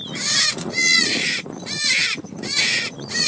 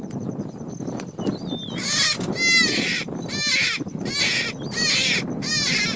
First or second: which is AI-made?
first